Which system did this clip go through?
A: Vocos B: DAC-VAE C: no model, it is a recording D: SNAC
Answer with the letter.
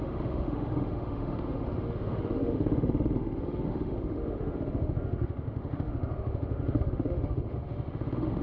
B